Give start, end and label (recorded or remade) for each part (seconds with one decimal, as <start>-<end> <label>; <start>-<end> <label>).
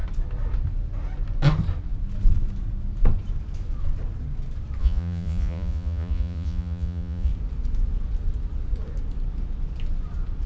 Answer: 0.0-4.8 recorded; 4.8-7.3 remade; 7.3-10.5 recorded